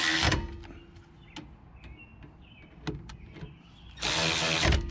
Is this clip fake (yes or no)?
no